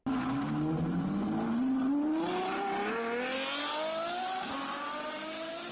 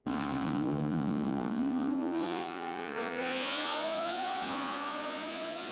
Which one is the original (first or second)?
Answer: first